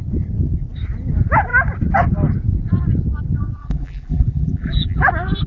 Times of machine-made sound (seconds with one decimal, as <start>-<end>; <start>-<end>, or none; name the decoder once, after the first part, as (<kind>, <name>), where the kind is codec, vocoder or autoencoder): 3.6-5.1 (vocoder, BigVGAN v2)